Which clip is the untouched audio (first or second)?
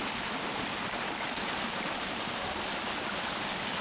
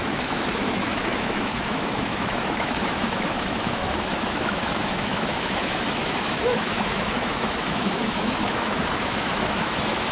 first